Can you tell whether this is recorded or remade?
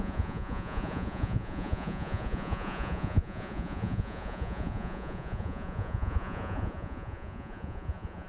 remade